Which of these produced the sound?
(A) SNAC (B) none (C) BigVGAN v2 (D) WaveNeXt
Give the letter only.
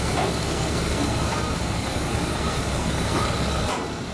A